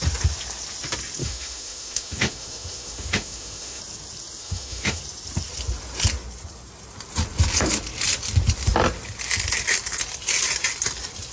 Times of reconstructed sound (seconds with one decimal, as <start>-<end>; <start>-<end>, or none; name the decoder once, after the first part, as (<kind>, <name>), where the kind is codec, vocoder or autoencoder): 1.2-3.8 (autoencoder, DAC-VAE); 4.4-5.0